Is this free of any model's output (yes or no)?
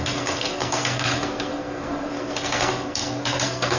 no